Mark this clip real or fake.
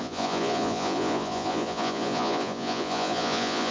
fake